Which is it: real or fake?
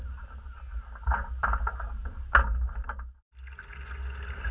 real